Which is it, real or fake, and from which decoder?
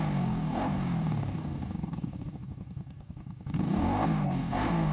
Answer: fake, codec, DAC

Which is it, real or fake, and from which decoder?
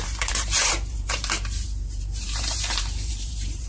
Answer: fake, vocoder, BigVGAN v2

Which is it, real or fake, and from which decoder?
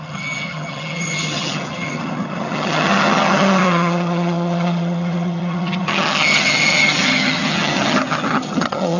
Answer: fake, vocoder, HiFi-GAN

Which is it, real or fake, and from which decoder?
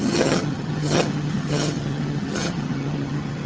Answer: fake, vocoder, HiFi-GAN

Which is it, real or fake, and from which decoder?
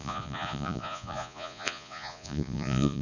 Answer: fake, vocoder, Vocos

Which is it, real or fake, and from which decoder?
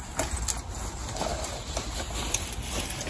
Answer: real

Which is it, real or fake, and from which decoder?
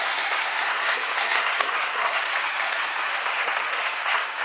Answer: fake, codec, SNAC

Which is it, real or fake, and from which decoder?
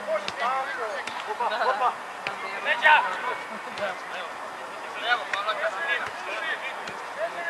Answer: real